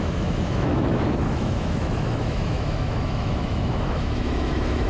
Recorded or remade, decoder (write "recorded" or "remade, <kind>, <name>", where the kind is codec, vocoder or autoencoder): remade, autoencoder, DAC-VAE